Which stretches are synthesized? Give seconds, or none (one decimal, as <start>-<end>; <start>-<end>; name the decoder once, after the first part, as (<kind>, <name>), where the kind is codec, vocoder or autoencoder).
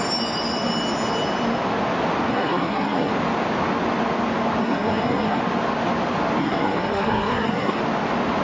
2.3-3.1 (codec, SNAC); 4.6-5.4; 6.4-7.8